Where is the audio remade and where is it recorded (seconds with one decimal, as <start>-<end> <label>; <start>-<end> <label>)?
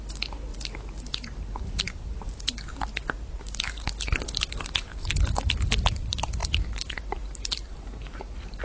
0.0-0.5 recorded; 0.5-5.4 remade; 5.4-6.4 recorded; 6.4-8.6 remade